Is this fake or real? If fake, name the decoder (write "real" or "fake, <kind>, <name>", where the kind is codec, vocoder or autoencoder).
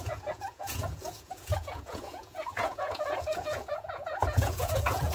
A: fake, vocoder, Vocos